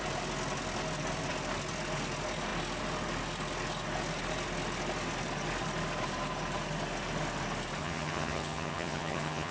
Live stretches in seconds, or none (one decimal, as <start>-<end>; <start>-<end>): 0.0-7.8